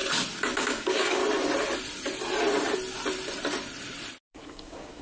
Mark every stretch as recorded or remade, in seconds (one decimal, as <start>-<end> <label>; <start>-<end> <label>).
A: 0.0-0.6 recorded; 0.6-1.2 remade; 1.2-4.2 recorded; 4.2-5.0 remade